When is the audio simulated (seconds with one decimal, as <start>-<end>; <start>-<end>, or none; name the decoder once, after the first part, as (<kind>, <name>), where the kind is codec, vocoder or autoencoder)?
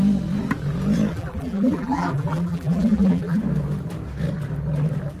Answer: 1.1-3.4 (vocoder, BigVGAN v2)